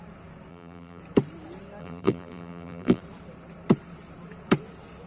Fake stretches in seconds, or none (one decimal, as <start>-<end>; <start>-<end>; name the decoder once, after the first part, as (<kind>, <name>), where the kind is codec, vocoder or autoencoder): 0.5-1.0 (vocoder, BigVGAN v2); 1.8-3.0